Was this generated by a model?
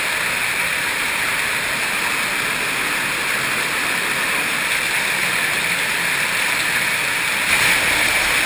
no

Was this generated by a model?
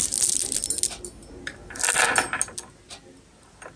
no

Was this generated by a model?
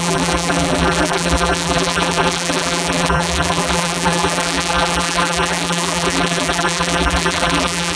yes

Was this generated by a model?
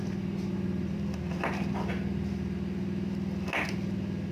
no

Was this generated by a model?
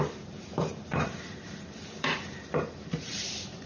yes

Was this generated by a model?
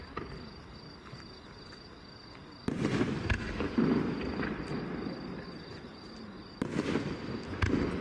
no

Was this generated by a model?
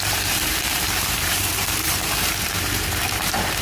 yes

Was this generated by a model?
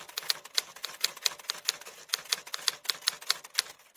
yes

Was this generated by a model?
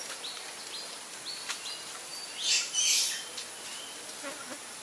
no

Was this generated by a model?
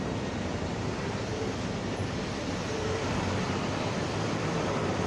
yes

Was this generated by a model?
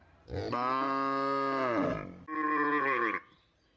no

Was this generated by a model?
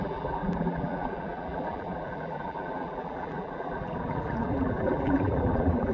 yes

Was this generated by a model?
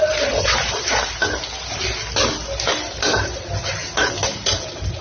no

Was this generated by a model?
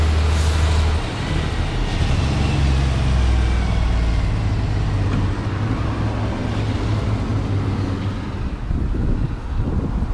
no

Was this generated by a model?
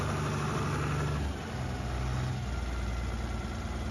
no